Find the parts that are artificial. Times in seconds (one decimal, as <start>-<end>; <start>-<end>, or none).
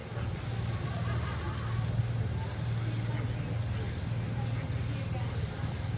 none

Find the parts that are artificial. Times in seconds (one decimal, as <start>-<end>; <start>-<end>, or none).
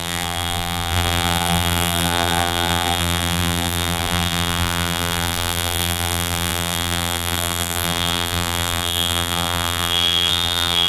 0.0-10.9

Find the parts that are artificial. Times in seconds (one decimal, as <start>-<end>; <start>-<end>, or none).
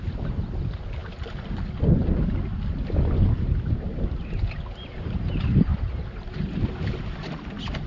5.7-6.6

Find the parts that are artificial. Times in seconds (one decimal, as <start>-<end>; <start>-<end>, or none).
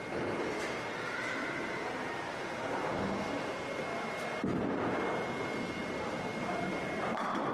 1.4-3.0; 5.8-6.4